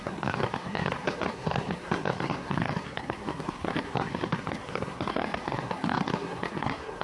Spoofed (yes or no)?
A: yes